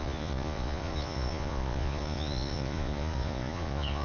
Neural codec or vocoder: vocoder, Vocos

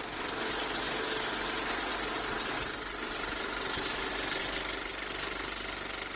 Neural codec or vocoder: none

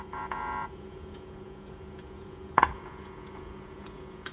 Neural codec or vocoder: vocoder, Vocos